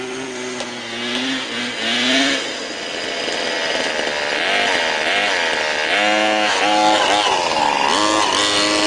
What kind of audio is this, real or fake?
real